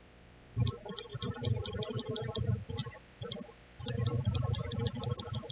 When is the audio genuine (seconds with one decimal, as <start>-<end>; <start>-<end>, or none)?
1.1-2.4